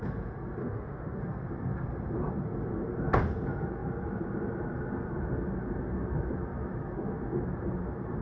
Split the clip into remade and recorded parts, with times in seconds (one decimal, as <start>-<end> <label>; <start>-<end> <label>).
0.0-0.6 recorded; 0.6-1.2 remade; 1.2-8.2 recorded